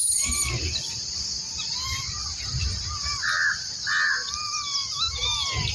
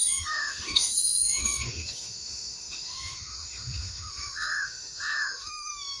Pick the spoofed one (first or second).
second